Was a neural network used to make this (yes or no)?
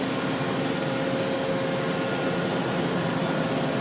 no